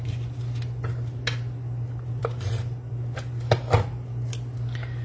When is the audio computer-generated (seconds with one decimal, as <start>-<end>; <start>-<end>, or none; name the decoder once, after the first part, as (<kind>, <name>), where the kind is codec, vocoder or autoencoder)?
none